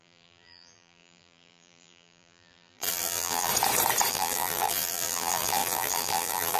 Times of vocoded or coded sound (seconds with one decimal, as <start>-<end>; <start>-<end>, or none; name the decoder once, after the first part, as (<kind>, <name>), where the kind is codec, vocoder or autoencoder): 0.0-3.5 (vocoder, BigVGAN v2); 4.1-6.6